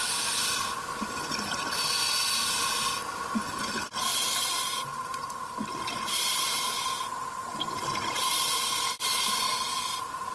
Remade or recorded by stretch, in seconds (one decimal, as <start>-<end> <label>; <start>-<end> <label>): 0.0-10.3 recorded